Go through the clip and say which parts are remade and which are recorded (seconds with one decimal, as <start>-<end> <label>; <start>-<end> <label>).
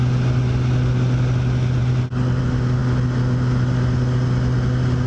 0.0-5.1 recorded